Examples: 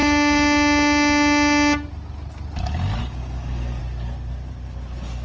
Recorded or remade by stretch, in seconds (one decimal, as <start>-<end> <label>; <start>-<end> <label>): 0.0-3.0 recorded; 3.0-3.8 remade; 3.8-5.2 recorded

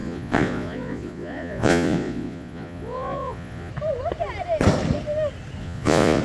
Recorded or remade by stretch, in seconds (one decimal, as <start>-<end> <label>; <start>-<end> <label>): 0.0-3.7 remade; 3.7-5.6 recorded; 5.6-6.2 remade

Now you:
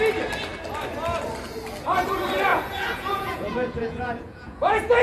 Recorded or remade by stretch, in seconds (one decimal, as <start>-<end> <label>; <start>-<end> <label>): 0.0-2.5 recorded; 2.5-5.0 remade

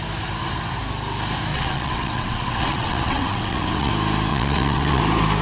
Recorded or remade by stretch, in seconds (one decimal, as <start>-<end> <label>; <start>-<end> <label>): 0.0-1.5 recorded; 1.5-3.9 remade; 3.9-4.3 recorded; 4.3-5.0 remade; 5.0-5.4 recorded

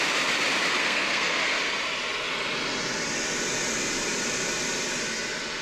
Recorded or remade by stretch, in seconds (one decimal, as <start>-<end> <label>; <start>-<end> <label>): 0.0-0.8 recorded; 0.8-1.4 remade; 1.4-5.6 recorded

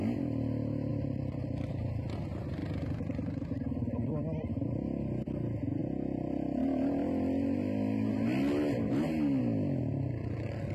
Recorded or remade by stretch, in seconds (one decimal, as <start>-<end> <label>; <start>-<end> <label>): 0.0-0.9 recorded; 0.9-2.2 remade; 2.2-2.6 recorded; 2.6-4.5 remade; 4.5-10.7 recorded

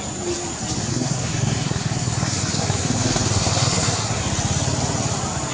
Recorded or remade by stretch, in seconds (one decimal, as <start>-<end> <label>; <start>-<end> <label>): 0.0-0.9 recorded; 0.9-4.2 remade; 4.2-5.5 recorded